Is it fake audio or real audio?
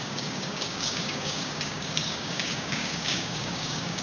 fake